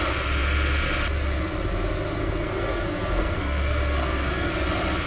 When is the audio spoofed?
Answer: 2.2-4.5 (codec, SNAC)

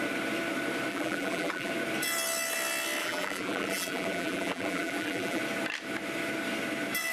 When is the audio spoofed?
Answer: 0.9-1.7 (vocoder, BigVGAN v2); 3.0-5.4

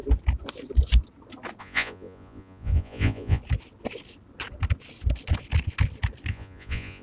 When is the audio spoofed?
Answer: 1.6-3.4 (vocoder, Vocos); 6.3-7.0

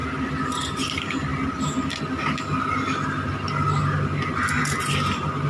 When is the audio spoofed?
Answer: none

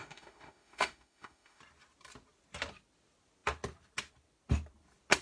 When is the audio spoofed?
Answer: 0.0-1.6 (autoencoder, DAC-VAE)

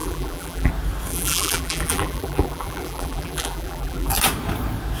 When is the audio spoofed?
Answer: 0.0-0.7 (vocoder, BigVGAN v2); 1.1-4.1

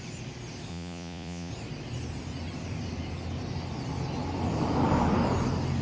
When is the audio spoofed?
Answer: 0.7-1.5 (vocoder, Vocos)

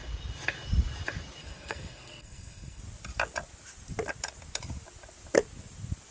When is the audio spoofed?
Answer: 1.4-2.8 (codec, SNAC)